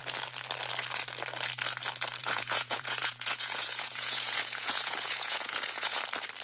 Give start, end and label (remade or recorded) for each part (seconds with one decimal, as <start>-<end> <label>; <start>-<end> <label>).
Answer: 0.0-2.2 recorded; 2.2-6.0 remade; 6.0-6.4 recorded